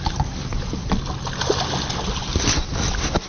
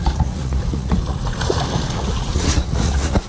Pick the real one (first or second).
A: first